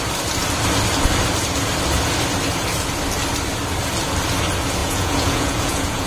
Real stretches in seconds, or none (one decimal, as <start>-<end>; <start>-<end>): 0.0-4.8